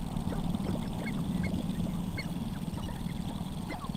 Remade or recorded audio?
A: recorded